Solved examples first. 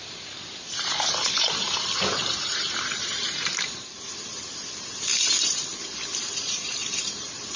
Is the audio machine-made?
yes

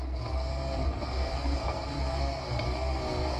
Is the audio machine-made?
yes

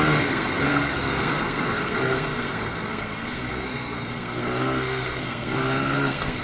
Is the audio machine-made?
yes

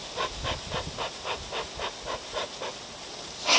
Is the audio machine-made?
no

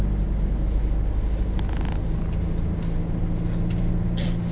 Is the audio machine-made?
no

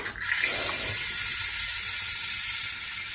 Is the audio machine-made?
no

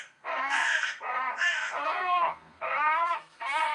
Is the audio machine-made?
yes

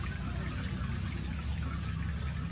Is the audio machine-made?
no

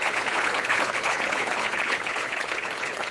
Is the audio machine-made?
yes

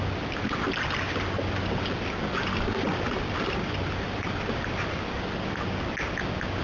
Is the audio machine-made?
no